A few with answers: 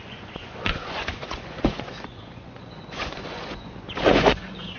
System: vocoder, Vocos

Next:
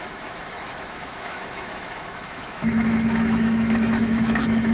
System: autoencoder, DAC-VAE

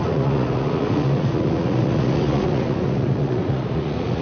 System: vocoder, Vocos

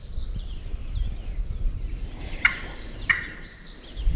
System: none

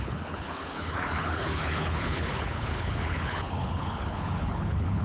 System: codec, HILCodec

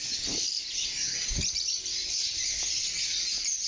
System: none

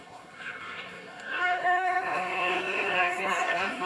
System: codec, SNAC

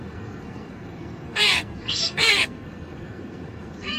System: codec, SNAC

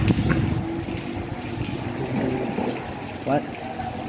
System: none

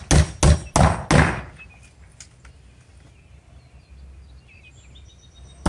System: none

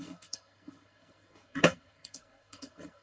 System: codec, SNAC